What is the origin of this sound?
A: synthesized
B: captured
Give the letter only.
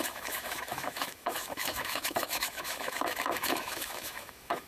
A